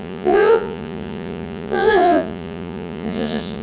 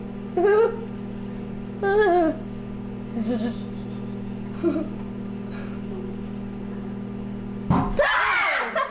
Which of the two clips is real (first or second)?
second